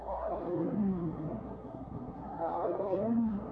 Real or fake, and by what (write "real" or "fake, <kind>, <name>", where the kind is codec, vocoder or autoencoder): fake, codec, SNAC